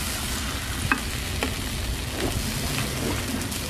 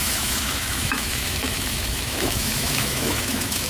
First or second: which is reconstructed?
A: second